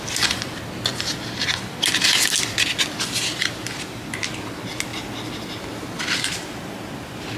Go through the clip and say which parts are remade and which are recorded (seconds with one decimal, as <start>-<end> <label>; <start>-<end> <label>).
0.0-7.4 recorded